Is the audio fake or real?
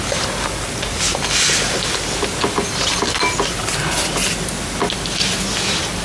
real